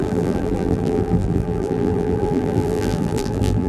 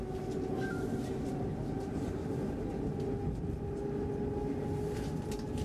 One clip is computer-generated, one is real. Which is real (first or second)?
second